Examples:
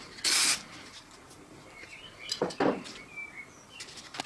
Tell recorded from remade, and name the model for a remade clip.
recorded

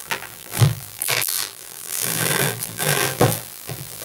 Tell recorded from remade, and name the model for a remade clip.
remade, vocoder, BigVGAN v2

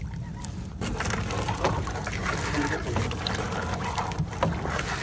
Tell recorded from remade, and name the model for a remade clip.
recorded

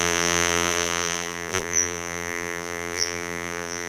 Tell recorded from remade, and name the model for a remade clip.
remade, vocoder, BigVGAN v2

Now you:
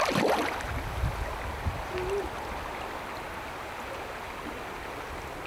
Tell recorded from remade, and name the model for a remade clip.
recorded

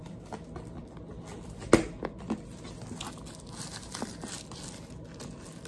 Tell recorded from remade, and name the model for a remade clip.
recorded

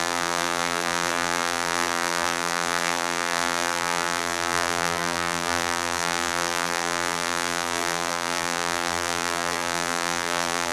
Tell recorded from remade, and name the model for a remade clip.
remade, vocoder, BigVGAN v2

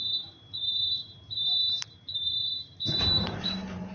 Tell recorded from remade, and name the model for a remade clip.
remade, vocoder, BigVGAN v2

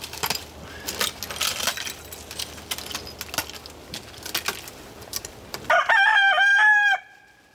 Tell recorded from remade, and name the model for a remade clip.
recorded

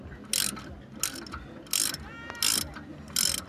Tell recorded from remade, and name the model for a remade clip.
recorded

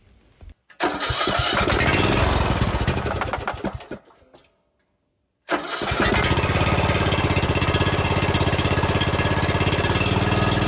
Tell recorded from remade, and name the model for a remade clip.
recorded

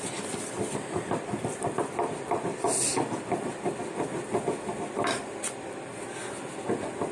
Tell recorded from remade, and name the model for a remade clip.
remade, vocoder, BigVGAN v2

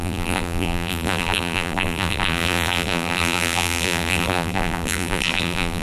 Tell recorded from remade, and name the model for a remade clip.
remade, vocoder, BigVGAN v2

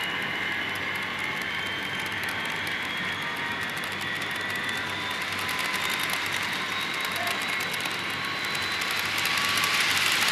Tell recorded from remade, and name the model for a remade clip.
recorded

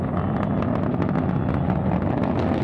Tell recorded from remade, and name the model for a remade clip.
recorded